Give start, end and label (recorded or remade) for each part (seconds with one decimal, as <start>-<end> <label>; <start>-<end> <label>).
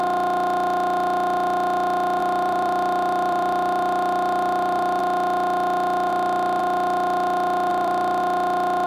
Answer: 0.0-2.2 recorded; 2.2-5.0 remade; 5.0-7.7 recorded; 7.7-8.2 remade; 8.2-8.9 recorded